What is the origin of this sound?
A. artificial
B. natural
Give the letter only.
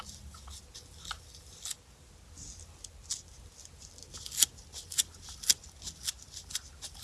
B